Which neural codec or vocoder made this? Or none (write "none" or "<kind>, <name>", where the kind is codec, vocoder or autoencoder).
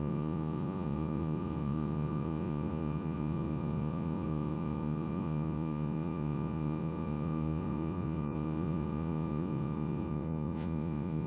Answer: vocoder, Vocos